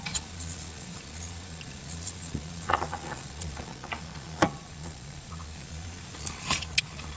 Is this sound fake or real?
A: fake